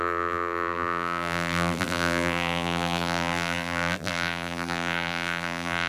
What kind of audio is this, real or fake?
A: fake